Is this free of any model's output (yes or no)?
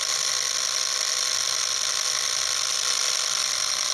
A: yes